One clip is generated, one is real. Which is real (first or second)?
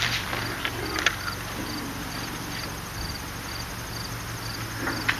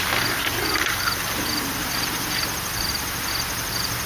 first